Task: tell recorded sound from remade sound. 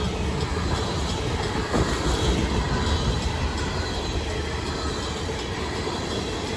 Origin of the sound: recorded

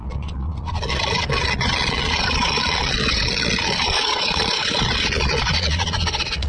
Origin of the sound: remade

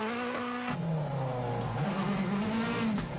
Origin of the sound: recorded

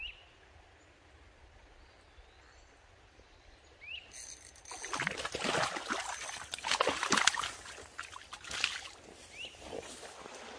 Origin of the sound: recorded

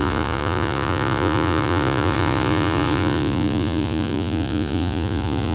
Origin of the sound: remade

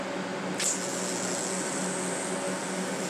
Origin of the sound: recorded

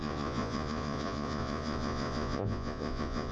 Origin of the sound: remade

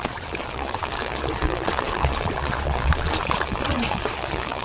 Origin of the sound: remade